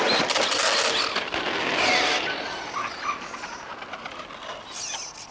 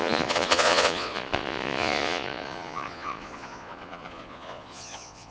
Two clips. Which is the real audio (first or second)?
first